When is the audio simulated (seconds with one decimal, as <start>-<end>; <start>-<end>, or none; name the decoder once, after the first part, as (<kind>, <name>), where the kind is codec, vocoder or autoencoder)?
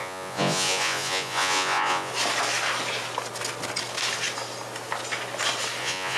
0.0-2.1 (vocoder, Vocos); 5.8-6.2